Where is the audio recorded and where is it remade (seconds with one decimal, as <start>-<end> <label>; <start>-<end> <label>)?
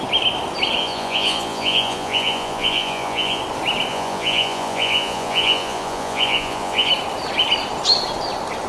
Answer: 0.0-0.8 recorded; 0.8-3.4 remade; 3.4-3.9 recorded; 3.9-6.9 remade; 6.9-8.7 recorded